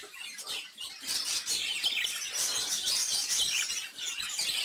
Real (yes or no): yes